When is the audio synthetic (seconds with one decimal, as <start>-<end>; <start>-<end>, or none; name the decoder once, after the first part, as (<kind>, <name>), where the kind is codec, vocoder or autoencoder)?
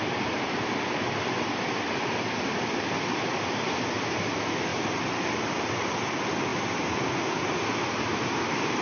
none